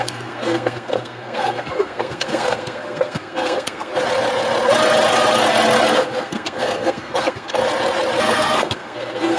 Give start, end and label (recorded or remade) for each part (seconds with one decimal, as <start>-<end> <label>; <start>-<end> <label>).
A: 0.0-3.9 remade; 3.9-5.9 recorded; 5.9-7.6 remade; 7.6-8.2 recorded; 8.2-9.4 remade